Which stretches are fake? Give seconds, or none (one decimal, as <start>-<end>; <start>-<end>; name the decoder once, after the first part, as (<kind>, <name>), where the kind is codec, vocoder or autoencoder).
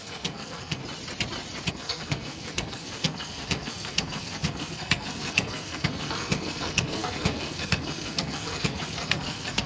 0.0-0.8 (codec, SNAC); 1.7-9.7